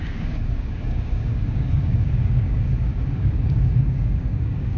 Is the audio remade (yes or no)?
yes